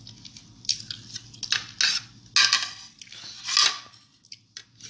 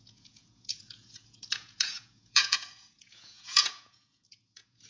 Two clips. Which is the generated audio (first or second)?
second